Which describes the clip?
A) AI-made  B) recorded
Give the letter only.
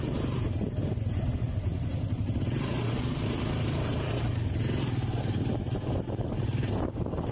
A